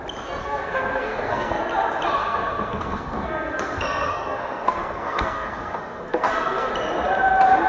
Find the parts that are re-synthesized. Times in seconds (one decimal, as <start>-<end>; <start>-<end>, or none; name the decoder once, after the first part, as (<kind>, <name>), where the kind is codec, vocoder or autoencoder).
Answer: 0.4-1.6 (codec, SNAC); 2.2-6.7